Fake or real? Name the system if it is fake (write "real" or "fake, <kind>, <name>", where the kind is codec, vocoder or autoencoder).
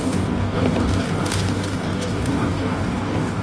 fake, codec, DAC